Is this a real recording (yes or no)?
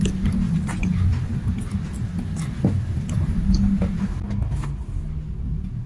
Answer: yes